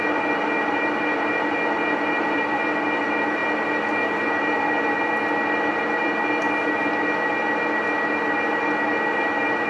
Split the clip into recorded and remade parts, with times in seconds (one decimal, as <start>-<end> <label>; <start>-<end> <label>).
0.0-9.7 recorded